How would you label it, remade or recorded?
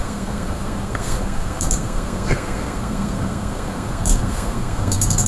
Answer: remade